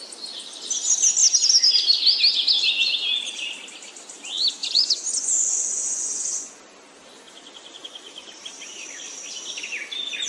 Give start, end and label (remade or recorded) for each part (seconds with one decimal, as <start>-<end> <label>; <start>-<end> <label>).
0.0-4.6 recorded; 4.6-6.5 remade; 6.5-10.3 recorded